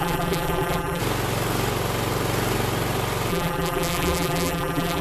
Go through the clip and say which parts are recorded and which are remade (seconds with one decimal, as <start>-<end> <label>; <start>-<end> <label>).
0.0-1.0 remade; 1.0-3.3 recorded; 3.3-5.0 remade